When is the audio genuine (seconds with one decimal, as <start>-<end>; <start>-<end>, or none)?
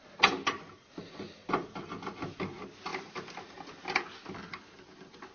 0.0-5.3